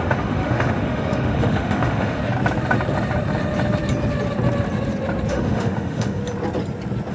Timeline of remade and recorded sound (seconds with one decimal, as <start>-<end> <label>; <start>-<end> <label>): 0.0-2.2 remade; 2.2-5.3 recorded; 5.3-6.2 remade; 6.2-7.1 recorded